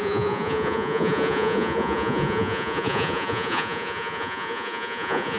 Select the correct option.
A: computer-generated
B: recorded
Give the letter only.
A